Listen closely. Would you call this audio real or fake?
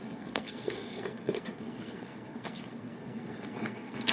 fake